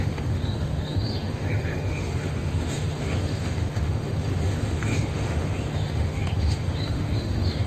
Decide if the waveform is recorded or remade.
remade